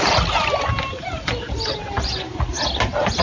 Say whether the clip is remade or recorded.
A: recorded